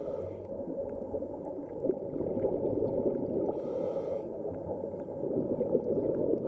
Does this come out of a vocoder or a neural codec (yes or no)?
no